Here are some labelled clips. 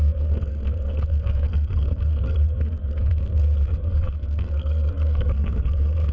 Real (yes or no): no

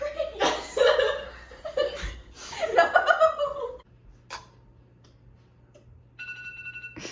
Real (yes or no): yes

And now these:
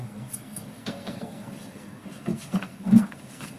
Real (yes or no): no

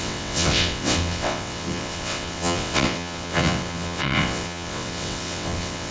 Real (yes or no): no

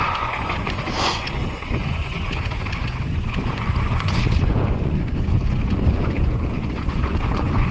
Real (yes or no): no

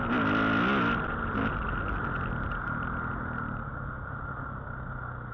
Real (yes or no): yes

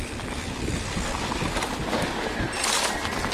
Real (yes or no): yes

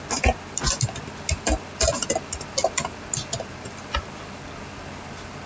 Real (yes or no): yes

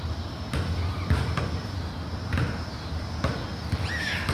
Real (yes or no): yes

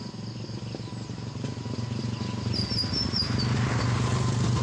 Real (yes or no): yes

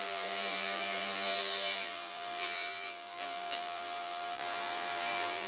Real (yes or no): no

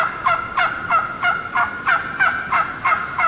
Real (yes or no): yes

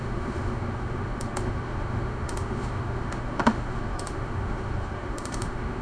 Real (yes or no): no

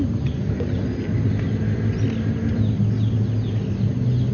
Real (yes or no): yes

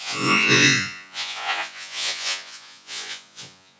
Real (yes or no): no